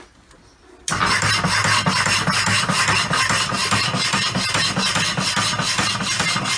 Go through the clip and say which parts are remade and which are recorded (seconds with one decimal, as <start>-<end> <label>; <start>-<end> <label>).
0.0-6.6 recorded